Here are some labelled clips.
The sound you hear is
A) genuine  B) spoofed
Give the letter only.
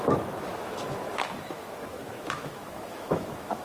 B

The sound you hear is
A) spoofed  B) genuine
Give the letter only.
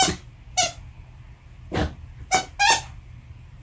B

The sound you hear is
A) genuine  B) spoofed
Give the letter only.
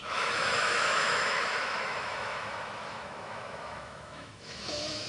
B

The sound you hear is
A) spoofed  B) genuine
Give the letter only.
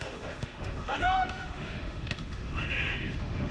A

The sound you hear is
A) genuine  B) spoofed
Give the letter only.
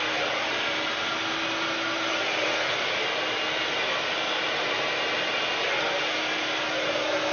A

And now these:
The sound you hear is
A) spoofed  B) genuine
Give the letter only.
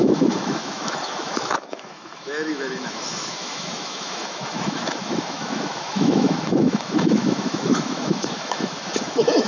A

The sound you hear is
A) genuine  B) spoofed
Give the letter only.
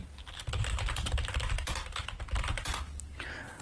A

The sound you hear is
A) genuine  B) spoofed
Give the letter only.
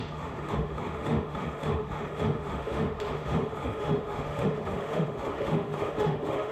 B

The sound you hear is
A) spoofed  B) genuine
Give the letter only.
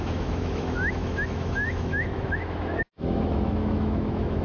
A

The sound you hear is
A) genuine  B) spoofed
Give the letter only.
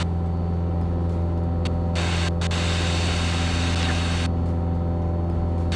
A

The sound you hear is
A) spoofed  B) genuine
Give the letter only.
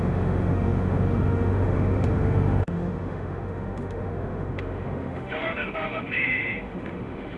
A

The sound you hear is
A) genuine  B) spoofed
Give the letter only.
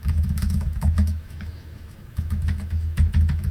B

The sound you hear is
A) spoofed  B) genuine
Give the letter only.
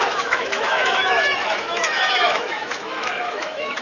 A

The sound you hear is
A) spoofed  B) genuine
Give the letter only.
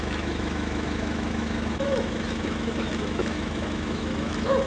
A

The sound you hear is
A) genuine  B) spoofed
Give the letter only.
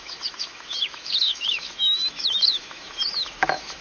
B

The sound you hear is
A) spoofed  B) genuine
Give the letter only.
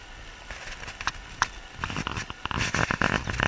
B